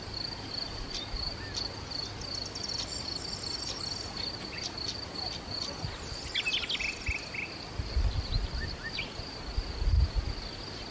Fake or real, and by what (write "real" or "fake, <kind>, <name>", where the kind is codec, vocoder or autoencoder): real